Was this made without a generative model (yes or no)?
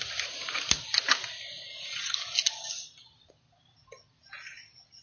yes